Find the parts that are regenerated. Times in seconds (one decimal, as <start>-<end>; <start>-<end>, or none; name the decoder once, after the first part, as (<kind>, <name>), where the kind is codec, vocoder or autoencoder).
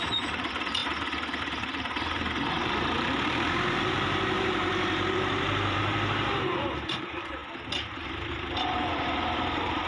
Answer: 0.0-0.8 (vocoder, BigVGAN v2); 1.4-7.4; 8.3-9.9